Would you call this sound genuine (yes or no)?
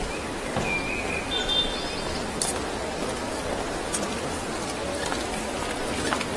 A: yes